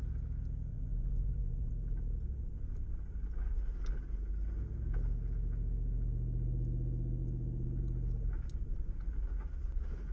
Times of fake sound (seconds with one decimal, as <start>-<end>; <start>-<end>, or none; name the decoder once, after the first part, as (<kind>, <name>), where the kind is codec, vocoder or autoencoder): 0.7-1.7 (vocoder, Vocos)